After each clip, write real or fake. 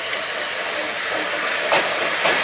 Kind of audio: real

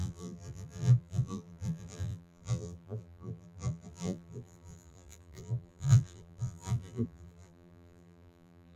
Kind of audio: fake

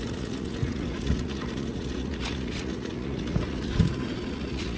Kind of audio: fake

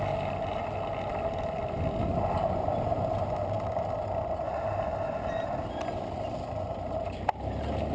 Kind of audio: real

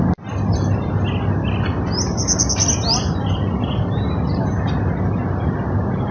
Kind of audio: real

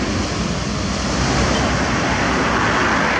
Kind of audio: real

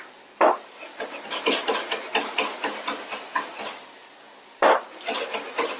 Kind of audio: real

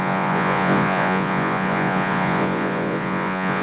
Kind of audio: fake